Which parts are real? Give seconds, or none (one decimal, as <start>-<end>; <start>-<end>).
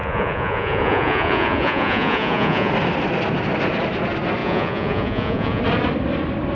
2.7-4.4; 5.6-6.5